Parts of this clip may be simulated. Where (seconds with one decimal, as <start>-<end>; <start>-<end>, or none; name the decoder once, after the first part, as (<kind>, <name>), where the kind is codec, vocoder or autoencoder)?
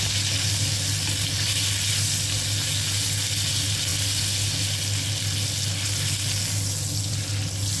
none